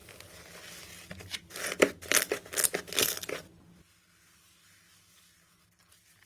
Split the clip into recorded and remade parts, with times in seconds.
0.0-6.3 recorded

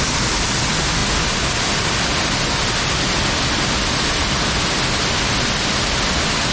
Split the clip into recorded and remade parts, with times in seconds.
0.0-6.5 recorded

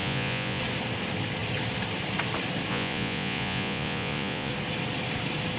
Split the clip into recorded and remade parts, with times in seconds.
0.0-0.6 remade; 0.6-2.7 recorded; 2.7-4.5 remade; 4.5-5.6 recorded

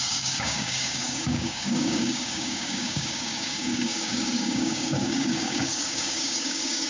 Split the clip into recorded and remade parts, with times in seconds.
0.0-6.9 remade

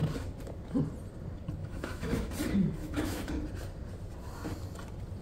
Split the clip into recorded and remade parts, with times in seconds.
0.0-1.6 recorded; 1.6-2.3 remade; 2.3-2.8 recorded; 2.8-3.3 remade; 3.3-5.2 recorded

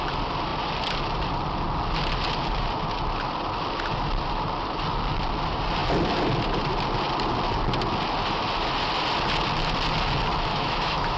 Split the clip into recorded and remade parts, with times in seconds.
0.0-10.5 recorded; 10.5-11.2 remade

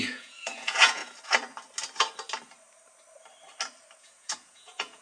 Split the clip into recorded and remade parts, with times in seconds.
0.0-1.0 remade; 1.0-4.0 recorded; 4.0-5.0 remade

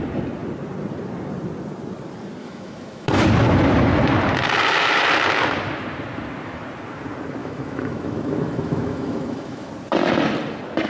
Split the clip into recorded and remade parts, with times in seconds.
0.0-2.4 recorded; 2.4-3.1 remade; 3.1-7.4 recorded; 7.4-9.7 remade; 9.7-10.9 recorded